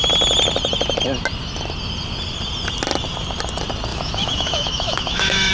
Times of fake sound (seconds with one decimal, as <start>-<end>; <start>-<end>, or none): 3.9-5.5